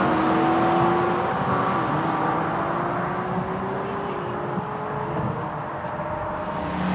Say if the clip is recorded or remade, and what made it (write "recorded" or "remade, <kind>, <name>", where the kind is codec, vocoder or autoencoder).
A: recorded